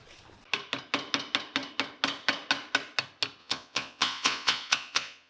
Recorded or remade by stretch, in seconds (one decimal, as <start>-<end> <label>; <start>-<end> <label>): 0.0-3.4 recorded; 3.4-5.3 remade